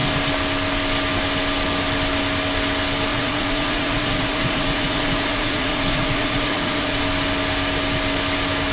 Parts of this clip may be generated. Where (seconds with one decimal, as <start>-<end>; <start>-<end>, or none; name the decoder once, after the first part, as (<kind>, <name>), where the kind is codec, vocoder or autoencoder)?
3.1-7.0 (vocoder, Vocos)

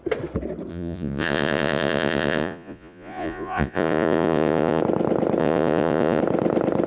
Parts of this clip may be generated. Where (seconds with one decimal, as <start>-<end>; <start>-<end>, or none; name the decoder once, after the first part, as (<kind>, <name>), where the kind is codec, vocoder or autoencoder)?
0.7-4.8 (vocoder, Vocos); 5.4-6.2